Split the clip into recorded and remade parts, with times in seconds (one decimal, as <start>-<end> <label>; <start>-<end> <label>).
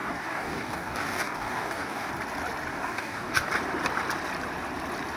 0.0-2.1 remade; 2.1-2.7 recorded; 2.7-3.5 remade; 3.5-5.2 recorded